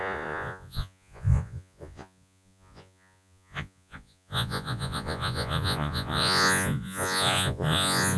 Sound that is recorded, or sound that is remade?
remade